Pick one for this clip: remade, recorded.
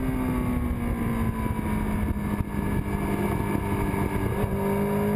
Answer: recorded